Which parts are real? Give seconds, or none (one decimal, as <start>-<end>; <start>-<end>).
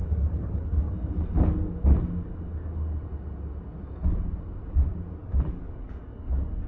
0.8-5.2